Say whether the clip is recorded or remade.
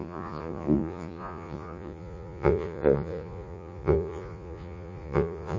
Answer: remade